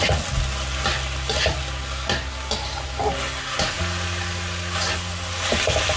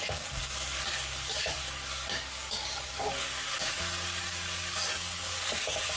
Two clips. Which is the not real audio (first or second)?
second